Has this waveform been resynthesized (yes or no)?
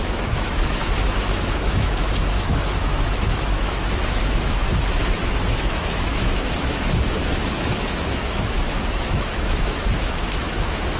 yes